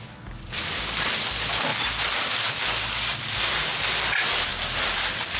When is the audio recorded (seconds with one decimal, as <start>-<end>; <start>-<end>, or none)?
0.0-1.7; 3.5-4.5